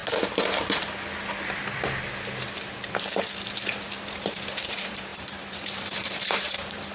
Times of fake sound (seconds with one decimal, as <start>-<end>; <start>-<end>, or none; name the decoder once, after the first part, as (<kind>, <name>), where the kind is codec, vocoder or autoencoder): 4.1-6.9 (vocoder, BigVGAN v2)